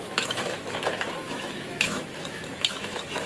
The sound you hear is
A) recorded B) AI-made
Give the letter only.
B